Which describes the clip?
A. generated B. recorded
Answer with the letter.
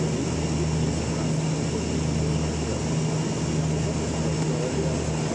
B